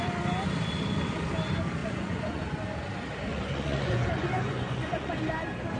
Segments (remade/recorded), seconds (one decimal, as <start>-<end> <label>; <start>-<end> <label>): 0.0-1.8 recorded; 1.8-2.4 remade; 2.4-3.3 recorded; 3.3-5.1 remade; 5.1-5.8 recorded